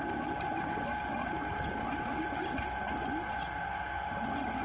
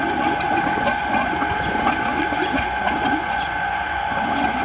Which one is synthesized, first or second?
second